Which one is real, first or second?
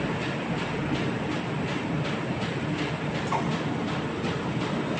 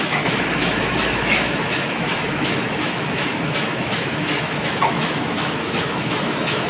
first